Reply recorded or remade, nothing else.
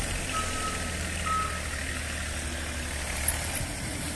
recorded